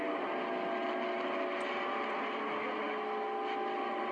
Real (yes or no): yes